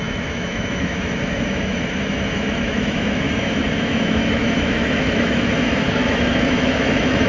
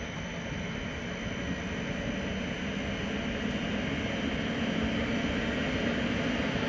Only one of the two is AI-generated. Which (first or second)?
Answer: first